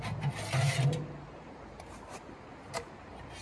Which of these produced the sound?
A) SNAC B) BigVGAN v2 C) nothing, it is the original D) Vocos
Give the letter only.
C